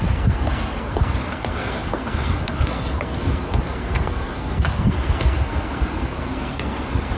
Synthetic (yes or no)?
yes